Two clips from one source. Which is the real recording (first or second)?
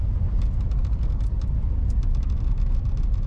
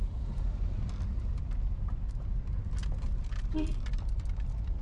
first